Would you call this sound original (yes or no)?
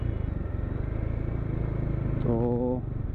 yes